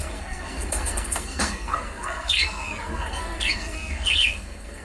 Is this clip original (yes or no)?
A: no